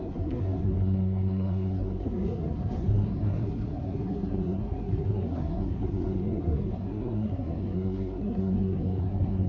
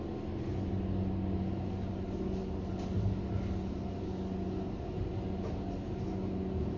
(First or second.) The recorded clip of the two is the second